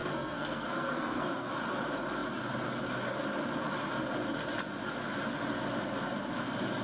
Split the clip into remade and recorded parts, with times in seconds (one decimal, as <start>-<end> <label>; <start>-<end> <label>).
0.0-1.5 remade; 1.5-6.8 recorded